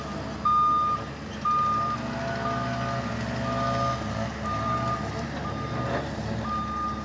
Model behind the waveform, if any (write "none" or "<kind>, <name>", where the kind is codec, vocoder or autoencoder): none